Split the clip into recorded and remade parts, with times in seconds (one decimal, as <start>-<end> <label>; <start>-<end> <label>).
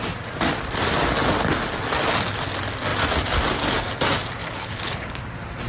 0.0-4.4 recorded; 4.4-5.2 remade; 5.2-5.7 recorded